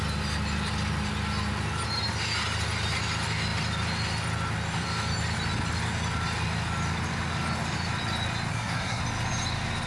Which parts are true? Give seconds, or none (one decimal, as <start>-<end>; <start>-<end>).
0.0-8.5; 9.0-9.9